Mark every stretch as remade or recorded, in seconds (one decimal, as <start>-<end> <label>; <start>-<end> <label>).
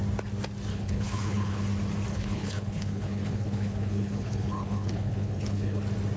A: 0.0-0.7 recorded; 0.7-1.6 remade; 1.6-2.1 recorded; 2.1-5.8 remade; 5.8-6.2 recorded